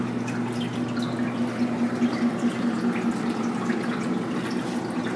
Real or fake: real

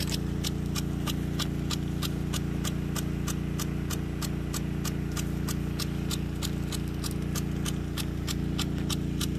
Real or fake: real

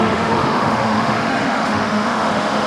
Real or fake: fake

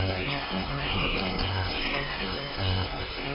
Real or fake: fake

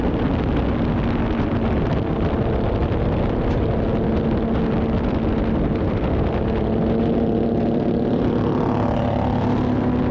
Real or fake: real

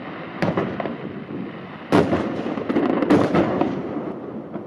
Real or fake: real